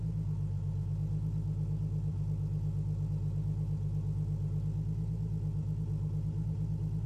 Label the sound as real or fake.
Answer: real